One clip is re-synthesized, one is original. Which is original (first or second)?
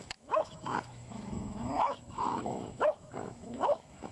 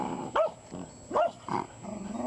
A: second